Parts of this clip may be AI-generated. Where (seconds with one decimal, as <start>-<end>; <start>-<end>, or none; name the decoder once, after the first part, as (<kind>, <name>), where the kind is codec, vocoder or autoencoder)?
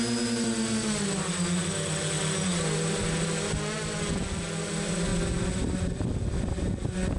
none